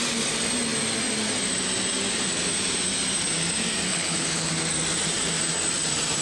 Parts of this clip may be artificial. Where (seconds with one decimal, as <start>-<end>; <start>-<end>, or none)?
3.9-4.5